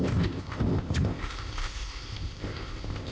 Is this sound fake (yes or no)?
yes